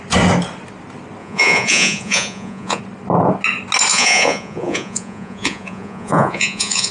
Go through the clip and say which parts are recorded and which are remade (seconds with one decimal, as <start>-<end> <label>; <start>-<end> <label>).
0.0-1.2 recorded; 1.2-2.8 remade; 2.8-3.9 recorded; 3.9-6.9 remade